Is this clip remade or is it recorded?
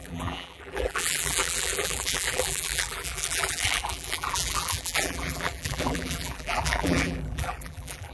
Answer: remade